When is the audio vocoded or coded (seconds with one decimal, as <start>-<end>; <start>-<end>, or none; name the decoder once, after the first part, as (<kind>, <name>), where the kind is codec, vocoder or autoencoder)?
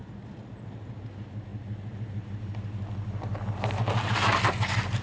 none